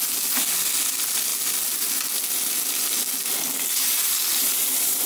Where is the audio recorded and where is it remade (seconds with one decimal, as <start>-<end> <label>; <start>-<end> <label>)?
0.0-4.3 recorded; 4.3-5.1 remade

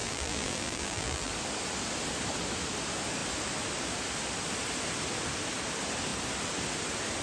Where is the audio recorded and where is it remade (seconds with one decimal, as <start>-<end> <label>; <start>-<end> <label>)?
0.0-1.3 remade; 1.3-7.2 recorded